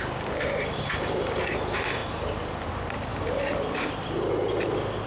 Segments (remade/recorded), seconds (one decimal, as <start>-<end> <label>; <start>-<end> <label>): 0.0-0.9 recorded; 0.9-5.1 remade